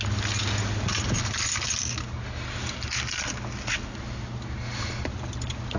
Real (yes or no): yes